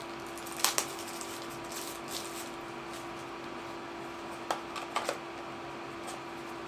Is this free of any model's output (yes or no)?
yes